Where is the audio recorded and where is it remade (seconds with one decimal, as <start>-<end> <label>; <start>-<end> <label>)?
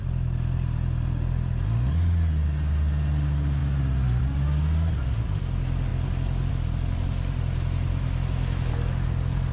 0.0-7.9 recorded; 7.9-8.7 remade; 8.7-9.5 recorded